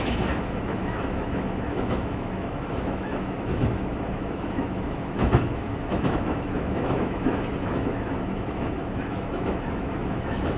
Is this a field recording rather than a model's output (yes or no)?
no